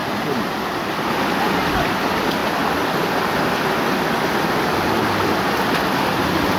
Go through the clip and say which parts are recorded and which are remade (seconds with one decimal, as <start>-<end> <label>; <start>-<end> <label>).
0.0-6.6 recorded